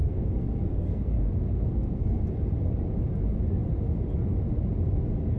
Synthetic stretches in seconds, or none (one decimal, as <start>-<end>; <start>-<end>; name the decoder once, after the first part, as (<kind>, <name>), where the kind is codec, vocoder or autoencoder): 0.0-2.2 (codec, SNAC)